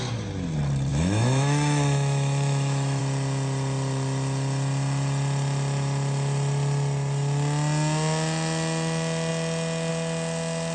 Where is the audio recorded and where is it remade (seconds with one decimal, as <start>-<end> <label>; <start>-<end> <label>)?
0.0-0.9 recorded; 0.9-3.0 remade; 3.0-10.7 recorded